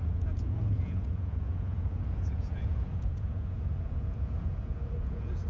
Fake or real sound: fake